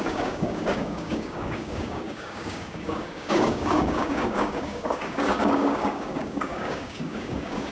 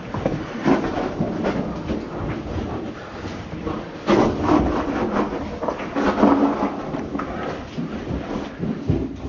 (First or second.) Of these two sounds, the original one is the second